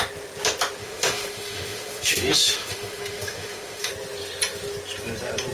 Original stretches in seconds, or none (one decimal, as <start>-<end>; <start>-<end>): 0.0-0.8; 3.9-5.5